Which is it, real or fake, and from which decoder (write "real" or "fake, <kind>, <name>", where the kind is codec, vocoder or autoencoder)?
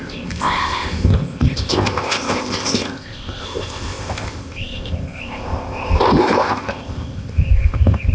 fake, codec, ZipCodec